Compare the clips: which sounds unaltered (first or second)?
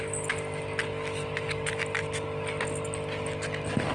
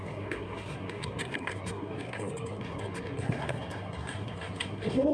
first